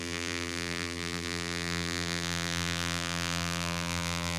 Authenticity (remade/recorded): remade